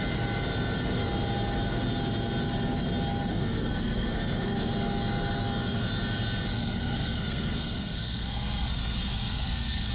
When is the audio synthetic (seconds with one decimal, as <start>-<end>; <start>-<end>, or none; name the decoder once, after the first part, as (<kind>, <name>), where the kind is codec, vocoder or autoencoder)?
3.3-4.7 (codec, SNAC); 6.5-9.9